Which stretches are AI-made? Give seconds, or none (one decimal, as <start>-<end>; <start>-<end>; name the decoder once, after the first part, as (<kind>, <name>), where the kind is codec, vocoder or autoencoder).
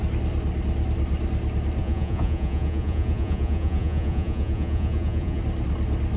1.8-5.4 (vocoder, Vocos)